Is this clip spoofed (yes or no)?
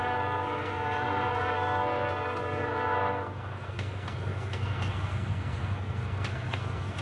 yes